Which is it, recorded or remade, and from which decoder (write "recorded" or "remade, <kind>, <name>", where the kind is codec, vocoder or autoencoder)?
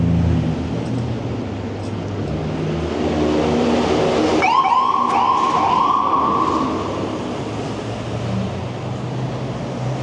recorded